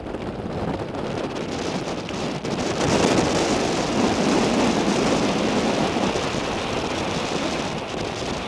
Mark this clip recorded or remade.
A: recorded